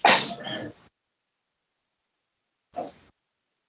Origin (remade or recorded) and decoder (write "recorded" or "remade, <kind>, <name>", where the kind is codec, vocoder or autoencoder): recorded